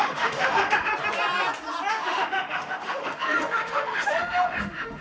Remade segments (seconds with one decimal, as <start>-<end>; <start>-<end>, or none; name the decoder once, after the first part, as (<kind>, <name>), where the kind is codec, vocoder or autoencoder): 0.0-0.9 (autoencoder, DAC-VAE); 1.9-5.0